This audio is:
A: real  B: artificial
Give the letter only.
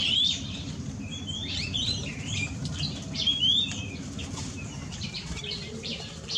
B